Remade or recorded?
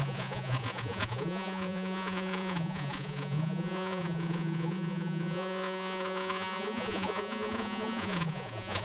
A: remade